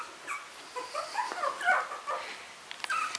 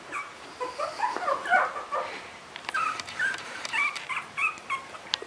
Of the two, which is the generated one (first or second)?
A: second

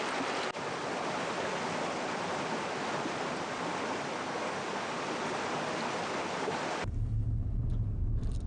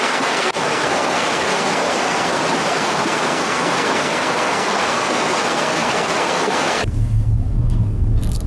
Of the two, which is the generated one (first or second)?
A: second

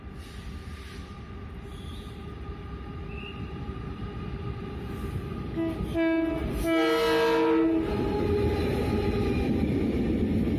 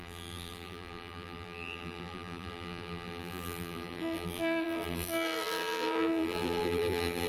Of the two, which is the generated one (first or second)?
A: second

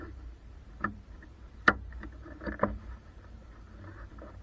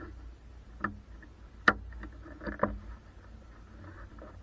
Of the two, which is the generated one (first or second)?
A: first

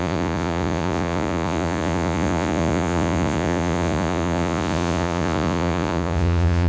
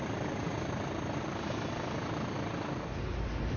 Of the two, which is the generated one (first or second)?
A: first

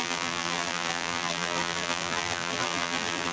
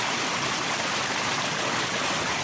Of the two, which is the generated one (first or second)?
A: first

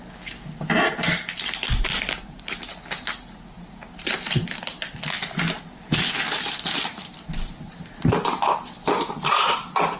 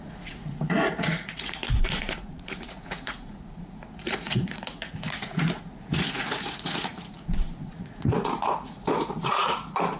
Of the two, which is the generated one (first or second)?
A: second